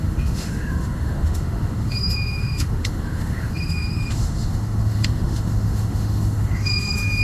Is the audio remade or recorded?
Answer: remade